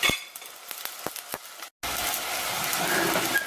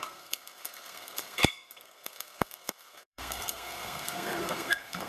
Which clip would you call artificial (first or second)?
second